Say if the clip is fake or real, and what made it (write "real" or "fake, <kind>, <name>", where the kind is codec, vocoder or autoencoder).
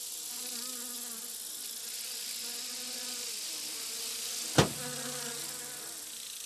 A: real